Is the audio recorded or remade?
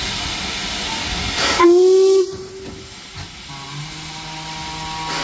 recorded